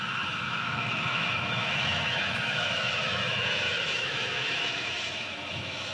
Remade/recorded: remade